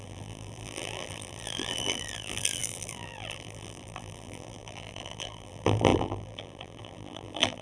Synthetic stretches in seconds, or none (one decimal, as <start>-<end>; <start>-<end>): 0.0-7.6